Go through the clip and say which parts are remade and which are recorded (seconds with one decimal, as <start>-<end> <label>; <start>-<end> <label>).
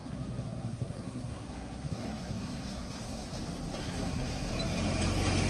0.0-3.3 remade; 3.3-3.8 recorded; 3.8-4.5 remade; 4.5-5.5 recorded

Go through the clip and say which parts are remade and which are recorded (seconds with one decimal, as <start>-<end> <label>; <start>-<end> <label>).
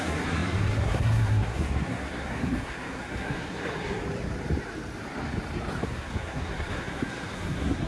0.0-4.0 remade; 4.0-5.8 recorded; 5.8-7.9 remade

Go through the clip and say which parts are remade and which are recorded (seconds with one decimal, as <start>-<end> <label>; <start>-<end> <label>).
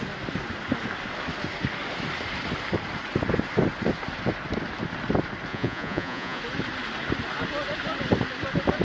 0.0-5.5 recorded; 5.5-6.4 remade; 6.4-8.8 recorded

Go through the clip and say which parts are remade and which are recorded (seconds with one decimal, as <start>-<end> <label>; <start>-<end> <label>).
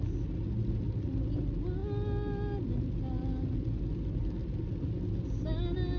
0.0-6.0 recorded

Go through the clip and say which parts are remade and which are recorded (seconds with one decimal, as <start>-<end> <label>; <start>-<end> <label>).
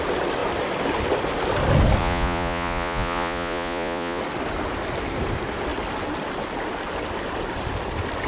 0.0-2.0 recorded; 2.0-4.2 remade; 4.2-8.3 recorded